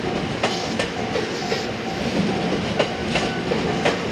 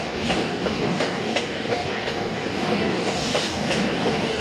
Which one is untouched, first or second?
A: first